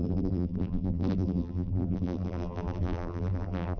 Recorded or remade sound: remade